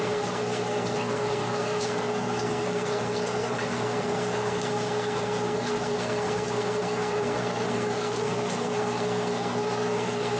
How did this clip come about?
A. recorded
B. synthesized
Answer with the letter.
B